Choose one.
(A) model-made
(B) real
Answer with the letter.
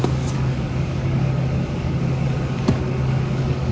A